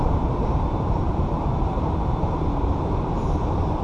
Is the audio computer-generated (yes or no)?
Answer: yes